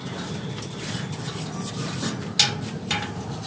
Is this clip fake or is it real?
real